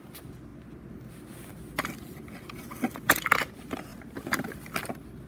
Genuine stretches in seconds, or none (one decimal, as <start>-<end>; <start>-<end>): 0.0-3.9; 4.6-5.3